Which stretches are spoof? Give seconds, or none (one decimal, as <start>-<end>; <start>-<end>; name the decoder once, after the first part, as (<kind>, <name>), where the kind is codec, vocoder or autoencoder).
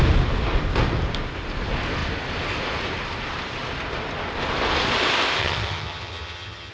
5.4-6.7 (vocoder, HiFi-GAN)